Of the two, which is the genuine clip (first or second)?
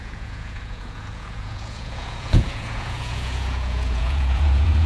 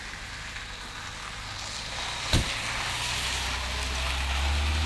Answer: second